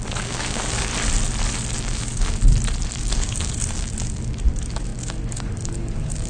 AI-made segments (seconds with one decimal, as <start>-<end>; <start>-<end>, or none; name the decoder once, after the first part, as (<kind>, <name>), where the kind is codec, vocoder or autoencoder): 0.0-0.9 (codec, DAC); 1.8-2.4; 2.9-6.3